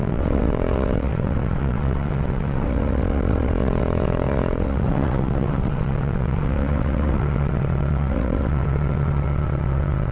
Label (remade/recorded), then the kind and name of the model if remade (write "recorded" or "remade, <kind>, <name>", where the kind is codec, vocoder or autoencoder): remade, vocoder, WaveNeXt